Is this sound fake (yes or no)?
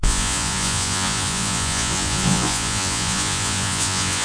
yes